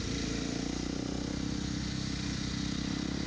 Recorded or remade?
recorded